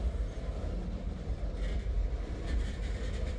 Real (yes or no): yes